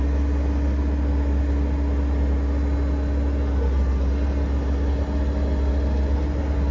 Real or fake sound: real